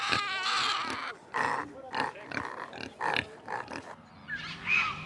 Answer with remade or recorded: recorded